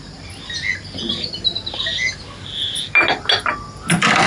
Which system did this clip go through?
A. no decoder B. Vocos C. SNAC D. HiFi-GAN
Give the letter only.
A